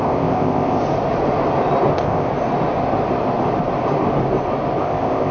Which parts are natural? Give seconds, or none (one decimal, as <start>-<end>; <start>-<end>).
0.8-1.9; 2.3-4.8